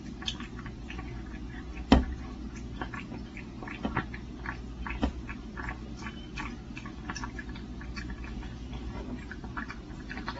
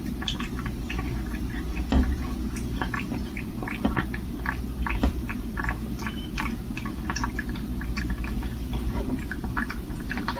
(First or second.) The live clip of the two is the first